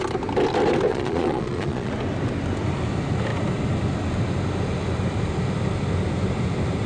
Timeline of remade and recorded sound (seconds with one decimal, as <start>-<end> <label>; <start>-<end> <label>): 0.0-0.9 recorded; 0.9-1.9 remade; 1.9-6.9 recorded